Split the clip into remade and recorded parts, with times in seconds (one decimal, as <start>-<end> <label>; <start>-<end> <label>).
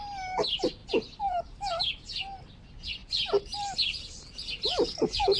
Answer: 0.0-5.4 recorded